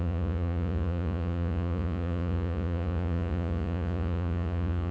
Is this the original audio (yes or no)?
no